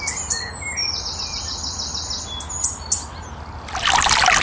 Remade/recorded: recorded